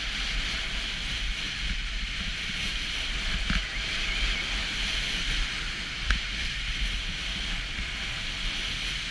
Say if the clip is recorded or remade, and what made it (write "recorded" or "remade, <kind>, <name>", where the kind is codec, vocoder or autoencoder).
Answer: recorded